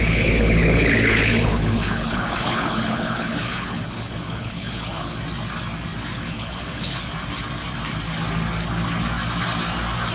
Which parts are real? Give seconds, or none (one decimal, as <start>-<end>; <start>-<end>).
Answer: 5.2-6.1; 7.1-10.1